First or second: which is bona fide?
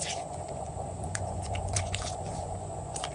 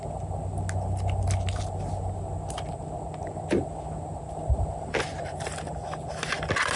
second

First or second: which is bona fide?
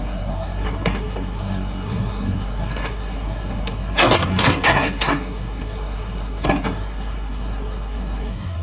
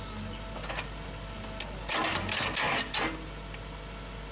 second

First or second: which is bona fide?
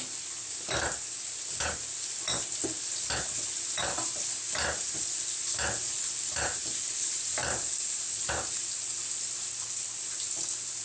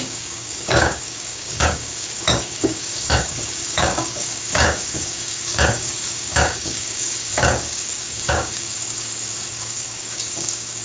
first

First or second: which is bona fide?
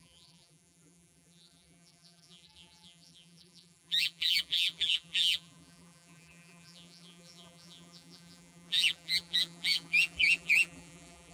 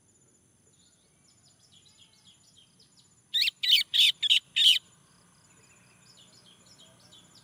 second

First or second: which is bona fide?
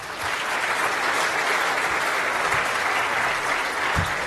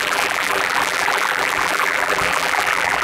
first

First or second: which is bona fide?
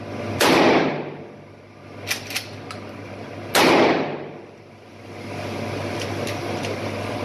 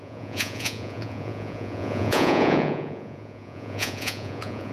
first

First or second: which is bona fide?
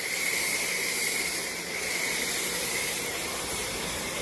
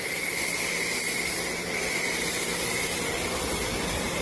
second